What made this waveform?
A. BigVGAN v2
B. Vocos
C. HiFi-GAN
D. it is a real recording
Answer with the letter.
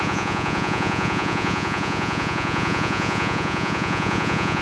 B